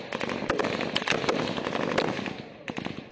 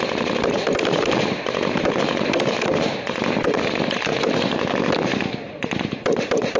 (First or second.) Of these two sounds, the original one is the first